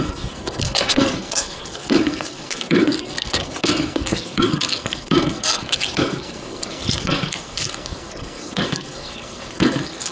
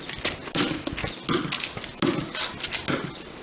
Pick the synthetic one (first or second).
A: first